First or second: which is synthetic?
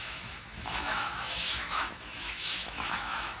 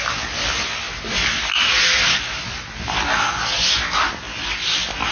first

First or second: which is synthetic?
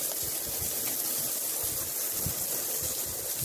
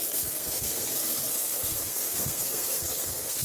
second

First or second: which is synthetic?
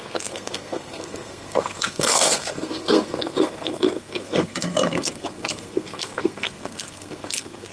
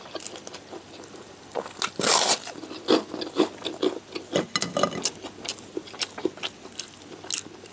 first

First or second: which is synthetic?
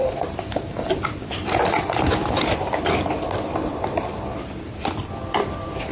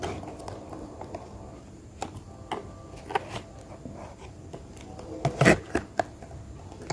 first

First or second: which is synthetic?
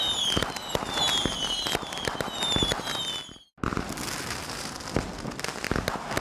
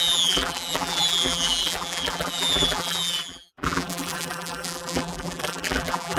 second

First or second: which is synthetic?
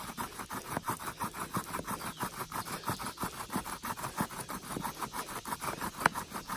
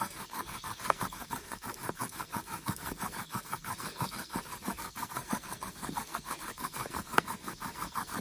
second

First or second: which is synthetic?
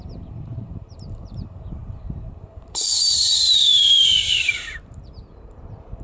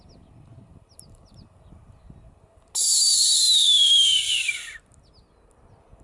first